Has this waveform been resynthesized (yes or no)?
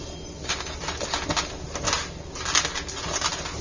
no